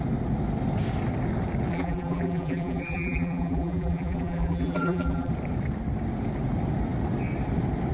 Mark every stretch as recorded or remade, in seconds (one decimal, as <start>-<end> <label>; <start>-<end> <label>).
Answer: 0.0-1.7 recorded; 1.7-5.3 remade; 5.3-7.9 recorded